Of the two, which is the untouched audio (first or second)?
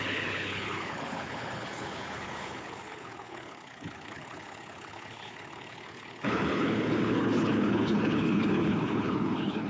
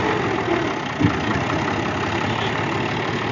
second